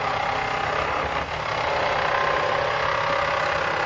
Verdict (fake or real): real